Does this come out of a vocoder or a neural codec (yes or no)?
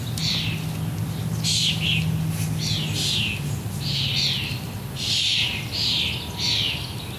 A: no